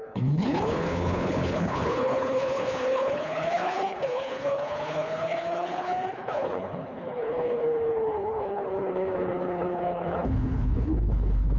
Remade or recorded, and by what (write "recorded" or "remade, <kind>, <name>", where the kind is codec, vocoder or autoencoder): remade, codec, HILCodec